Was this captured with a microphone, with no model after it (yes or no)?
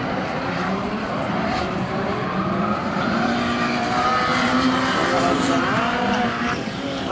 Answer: no